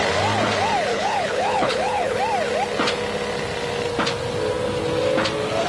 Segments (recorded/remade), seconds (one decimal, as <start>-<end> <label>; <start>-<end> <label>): 0.0-0.9 recorded; 0.9-2.2 remade; 2.2-5.7 recorded